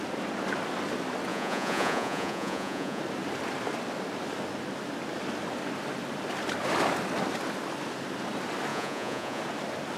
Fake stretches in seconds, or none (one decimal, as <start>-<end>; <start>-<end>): 1.3-3.0; 8.7-9.4